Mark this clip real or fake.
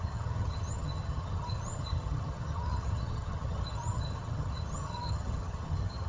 fake